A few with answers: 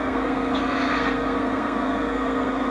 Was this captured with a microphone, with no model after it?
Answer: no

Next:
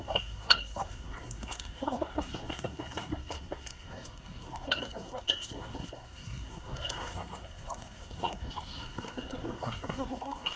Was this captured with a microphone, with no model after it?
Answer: no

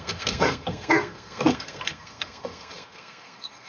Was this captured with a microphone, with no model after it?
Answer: no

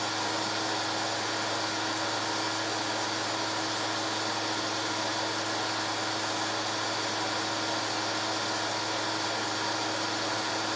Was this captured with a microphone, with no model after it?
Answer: yes